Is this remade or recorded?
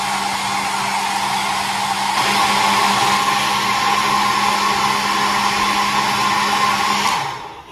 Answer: recorded